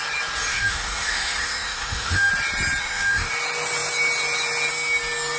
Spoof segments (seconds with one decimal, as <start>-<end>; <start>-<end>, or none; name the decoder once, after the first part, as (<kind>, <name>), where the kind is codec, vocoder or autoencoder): 0.5-2.3 (autoencoder, DAC-VAE); 2.8-3.3